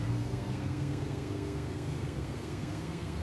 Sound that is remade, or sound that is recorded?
remade